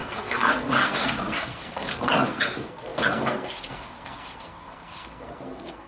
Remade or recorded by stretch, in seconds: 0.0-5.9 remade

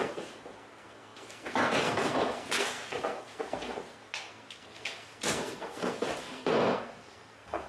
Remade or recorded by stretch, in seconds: 0.0-7.7 remade

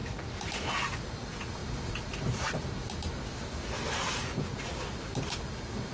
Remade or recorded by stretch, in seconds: 0.0-5.9 recorded

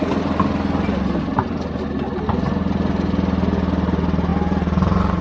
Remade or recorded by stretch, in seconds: 0.0-5.2 recorded

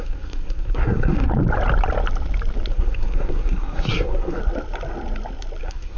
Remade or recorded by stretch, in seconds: 0.0-1.3 remade; 1.3-2.7 recorded; 2.7-4.4 remade; 4.4-5.6 recorded; 5.6-6.0 remade

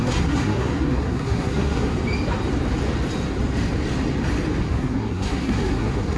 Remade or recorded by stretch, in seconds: 0.0-1.9 remade; 1.9-4.6 recorded; 4.6-6.2 remade

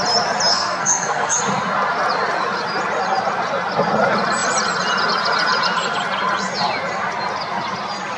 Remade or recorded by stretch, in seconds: 0.0-0.5 recorded; 0.5-1.4 remade; 1.4-8.2 recorded